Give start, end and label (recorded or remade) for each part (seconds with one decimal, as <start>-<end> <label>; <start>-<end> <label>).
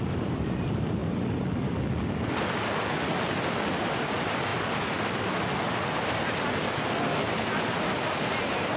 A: 0.0-8.8 recorded